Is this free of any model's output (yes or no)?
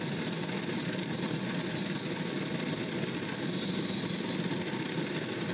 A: yes